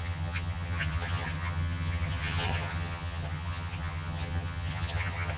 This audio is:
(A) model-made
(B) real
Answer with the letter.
A